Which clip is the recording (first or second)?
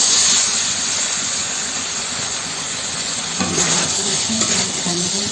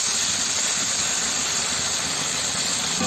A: second